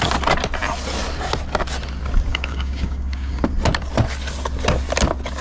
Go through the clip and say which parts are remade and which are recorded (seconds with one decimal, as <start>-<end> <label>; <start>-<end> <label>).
0.0-2.3 recorded; 2.3-3.4 remade; 3.4-5.4 recorded